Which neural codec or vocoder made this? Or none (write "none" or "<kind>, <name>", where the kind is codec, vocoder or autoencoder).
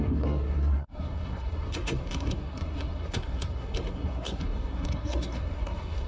codec, SNAC